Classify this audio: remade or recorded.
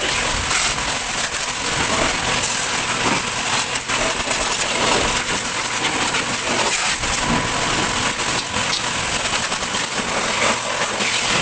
recorded